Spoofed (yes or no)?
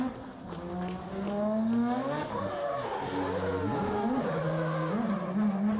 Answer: no